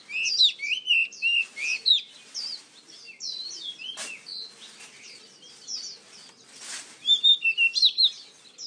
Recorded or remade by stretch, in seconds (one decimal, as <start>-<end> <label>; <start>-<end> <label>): 0.0-1.7 recorded; 1.7-3.8 remade; 3.8-8.7 recorded